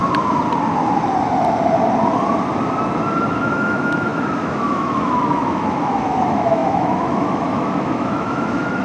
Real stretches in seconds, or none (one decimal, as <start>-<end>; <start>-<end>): 0.0-3.3